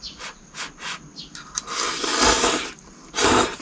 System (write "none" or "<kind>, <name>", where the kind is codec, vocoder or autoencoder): none